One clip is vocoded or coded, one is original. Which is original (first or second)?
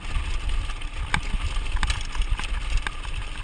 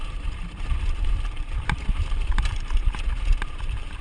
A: first